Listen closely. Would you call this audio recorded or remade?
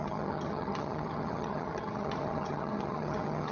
remade